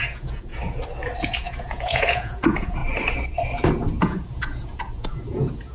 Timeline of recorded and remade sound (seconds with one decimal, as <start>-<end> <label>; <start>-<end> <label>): 0.0-0.5 remade; 0.5-1.2 recorded; 1.2-2.8 remade; 2.8-3.7 recorded; 3.7-5.7 remade